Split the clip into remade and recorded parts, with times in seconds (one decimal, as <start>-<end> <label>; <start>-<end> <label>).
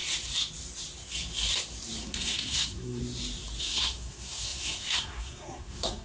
0.0-2.0 recorded; 2.0-3.0 remade; 3.0-3.6 recorded; 3.6-6.0 remade